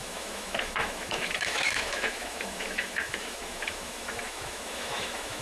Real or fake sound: fake